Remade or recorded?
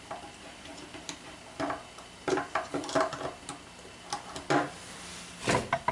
recorded